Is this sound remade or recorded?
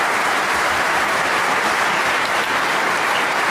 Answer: remade